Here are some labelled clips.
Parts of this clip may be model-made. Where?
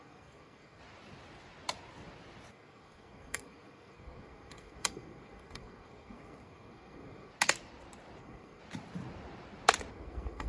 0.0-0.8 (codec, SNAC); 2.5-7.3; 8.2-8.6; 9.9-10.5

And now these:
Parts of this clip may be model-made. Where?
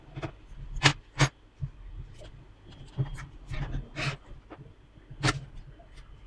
none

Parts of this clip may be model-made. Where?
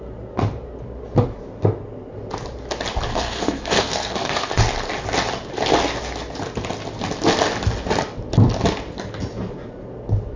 3.1-4.5 (codec, SNAC)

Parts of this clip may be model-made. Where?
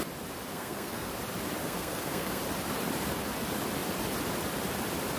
0.5-1.1 (codec, SNAC); 1.6-2.4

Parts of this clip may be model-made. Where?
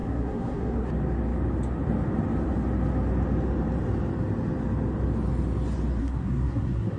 0.0-0.9 (codec, SNAC); 6.0-7.0